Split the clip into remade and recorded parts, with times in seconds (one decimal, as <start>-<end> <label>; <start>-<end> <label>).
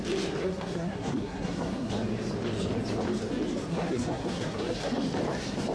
0.0-0.4 recorded; 0.4-1.9 remade; 1.9-3.7 recorded; 3.7-4.9 remade; 4.9-5.7 recorded